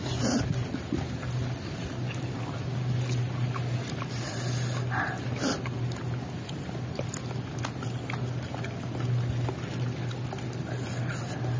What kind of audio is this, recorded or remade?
recorded